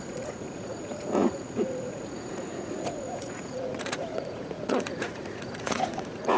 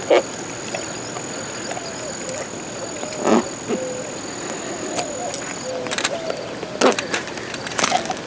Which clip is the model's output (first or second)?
first